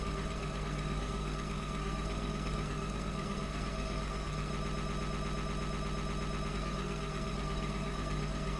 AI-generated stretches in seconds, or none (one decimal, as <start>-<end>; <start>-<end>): 0.0-4.5; 6.5-8.6